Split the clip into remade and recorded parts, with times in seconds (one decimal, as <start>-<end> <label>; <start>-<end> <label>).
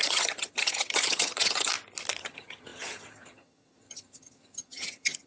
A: 0.0-1.7 remade; 1.7-2.2 recorded; 2.2-5.3 remade